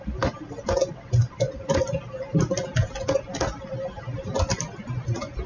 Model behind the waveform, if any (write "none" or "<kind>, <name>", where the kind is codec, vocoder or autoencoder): none